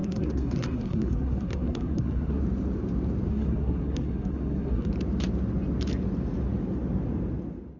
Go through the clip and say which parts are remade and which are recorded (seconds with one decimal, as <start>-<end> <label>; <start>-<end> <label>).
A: 0.0-2.4 remade; 2.4-3.3 recorded; 3.3-4.9 remade; 4.9-7.8 recorded